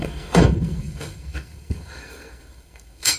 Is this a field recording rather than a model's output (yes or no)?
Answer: no